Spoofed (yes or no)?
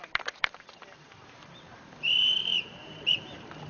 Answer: yes